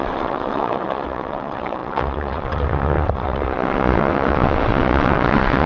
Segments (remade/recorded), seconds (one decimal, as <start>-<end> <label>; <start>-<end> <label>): 0.0-5.7 remade